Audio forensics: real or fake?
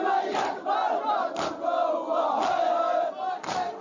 real